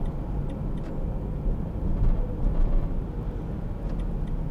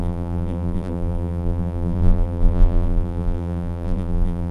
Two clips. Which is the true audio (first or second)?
first